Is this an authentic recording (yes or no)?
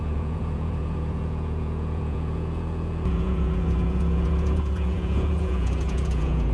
no